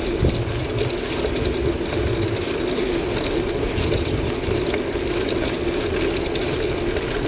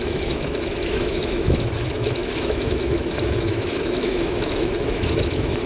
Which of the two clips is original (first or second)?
first